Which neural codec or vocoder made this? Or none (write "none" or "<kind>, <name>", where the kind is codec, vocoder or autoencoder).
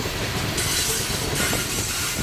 none